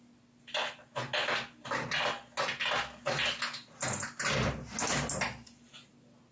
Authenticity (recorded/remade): recorded